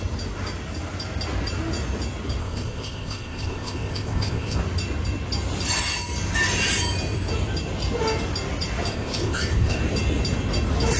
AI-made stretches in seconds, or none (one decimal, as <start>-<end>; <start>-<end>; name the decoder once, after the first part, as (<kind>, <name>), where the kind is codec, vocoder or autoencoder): 2.4-4.6 (codec, ZipCodec); 8.9-9.8